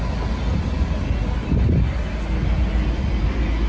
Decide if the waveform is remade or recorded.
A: recorded